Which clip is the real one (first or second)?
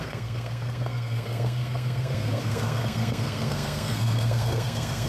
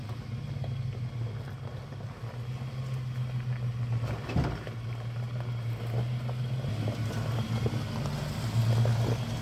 second